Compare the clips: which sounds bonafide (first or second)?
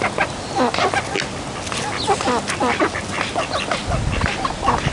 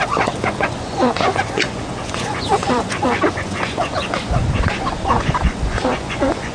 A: first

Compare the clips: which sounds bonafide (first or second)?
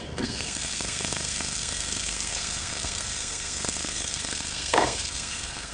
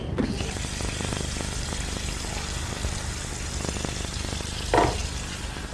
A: second